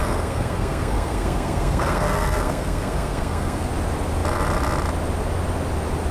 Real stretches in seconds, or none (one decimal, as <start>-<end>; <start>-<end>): 3.7-6.1